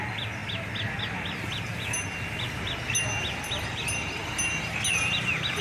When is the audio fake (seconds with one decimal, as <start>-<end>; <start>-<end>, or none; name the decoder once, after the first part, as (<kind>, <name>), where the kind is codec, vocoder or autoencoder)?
none

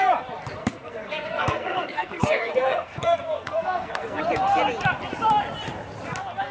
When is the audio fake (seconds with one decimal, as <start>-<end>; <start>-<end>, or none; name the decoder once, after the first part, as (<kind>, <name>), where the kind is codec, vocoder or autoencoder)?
0.6-4.2 (codec, SNAC)